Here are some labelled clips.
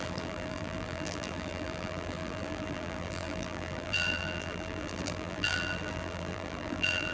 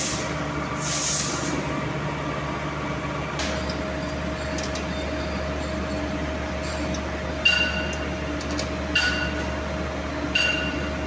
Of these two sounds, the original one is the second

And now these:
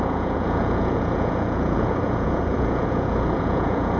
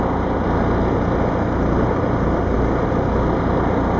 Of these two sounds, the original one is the second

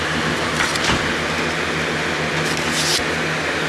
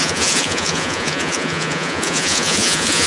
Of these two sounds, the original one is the first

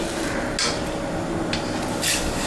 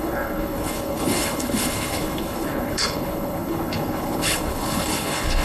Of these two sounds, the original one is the first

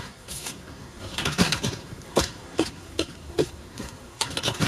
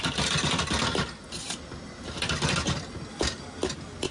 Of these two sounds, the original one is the second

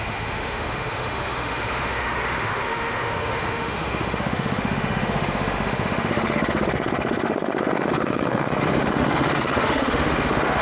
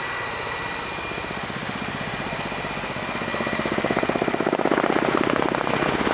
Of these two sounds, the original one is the second